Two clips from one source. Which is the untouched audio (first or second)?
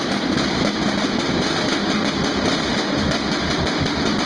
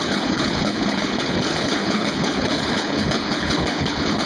first